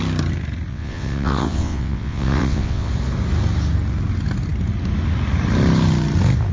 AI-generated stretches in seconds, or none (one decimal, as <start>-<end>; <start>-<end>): 0.7-2.9